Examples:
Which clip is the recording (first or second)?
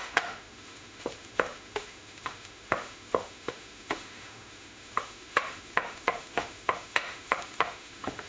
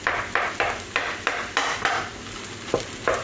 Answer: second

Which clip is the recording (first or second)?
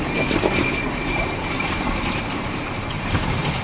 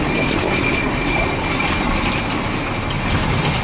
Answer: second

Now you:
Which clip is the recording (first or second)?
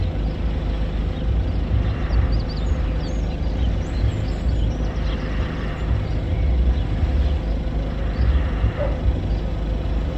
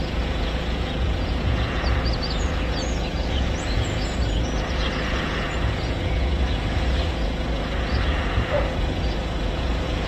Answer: first